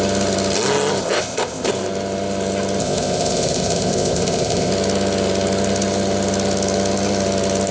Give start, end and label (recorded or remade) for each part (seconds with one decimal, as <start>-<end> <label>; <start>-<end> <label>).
0.0-1.0 recorded; 1.0-1.7 remade; 1.7-2.8 recorded; 2.8-4.7 remade; 4.7-7.7 recorded